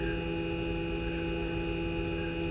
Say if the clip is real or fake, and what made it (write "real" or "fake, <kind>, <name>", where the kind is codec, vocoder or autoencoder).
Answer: real